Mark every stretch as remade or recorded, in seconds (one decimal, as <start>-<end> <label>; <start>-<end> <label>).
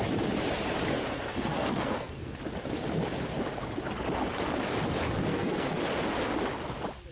0.0-0.9 recorded; 0.9-2.4 remade; 2.4-5.3 recorded; 5.3-5.8 remade; 5.8-7.1 recorded